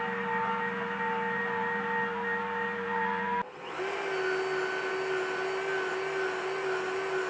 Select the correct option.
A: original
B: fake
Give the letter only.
A